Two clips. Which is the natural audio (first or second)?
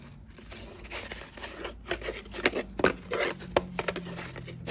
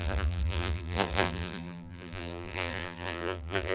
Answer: first